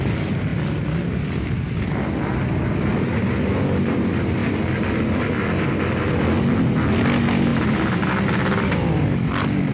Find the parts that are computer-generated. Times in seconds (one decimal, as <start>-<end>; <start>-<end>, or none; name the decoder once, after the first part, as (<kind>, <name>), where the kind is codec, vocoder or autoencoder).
0.5-1.9 (vocoder, BigVGAN v2); 4.4-5.3; 7.5-9.7